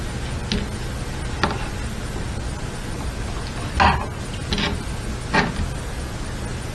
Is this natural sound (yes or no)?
yes